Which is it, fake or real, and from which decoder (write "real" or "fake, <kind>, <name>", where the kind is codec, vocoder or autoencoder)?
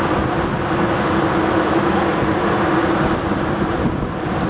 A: real